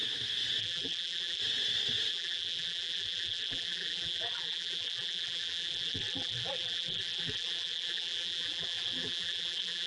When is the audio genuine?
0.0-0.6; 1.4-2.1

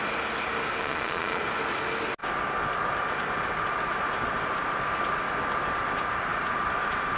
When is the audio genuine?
0.0-0.8; 1.4-7.2

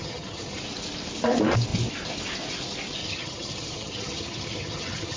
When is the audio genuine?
0.6-3.0

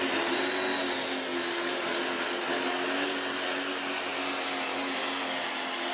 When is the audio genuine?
0.0-5.9